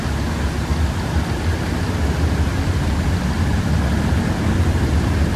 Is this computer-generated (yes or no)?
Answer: no